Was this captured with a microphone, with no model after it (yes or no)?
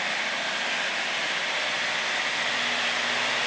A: yes